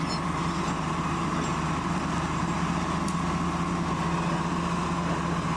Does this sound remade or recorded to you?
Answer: recorded